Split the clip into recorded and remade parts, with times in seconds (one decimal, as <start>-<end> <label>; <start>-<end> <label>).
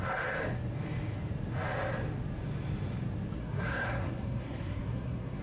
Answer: 0.0-3.4 recorded; 3.4-5.4 remade